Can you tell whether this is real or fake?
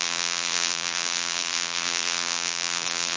fake